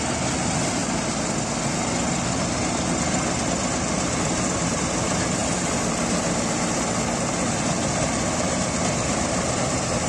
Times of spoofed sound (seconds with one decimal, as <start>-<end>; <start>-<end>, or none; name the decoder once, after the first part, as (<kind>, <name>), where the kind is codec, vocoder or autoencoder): none